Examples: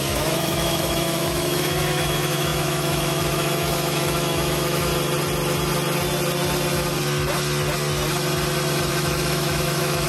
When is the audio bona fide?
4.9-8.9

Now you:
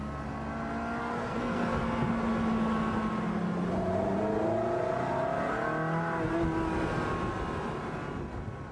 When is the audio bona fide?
0.0-1.0; 1.8-8.7

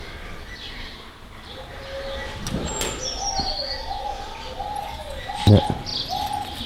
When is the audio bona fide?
0.0-4.8; 5.3-6.7

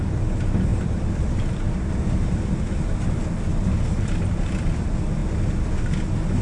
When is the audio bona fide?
0.0-6.4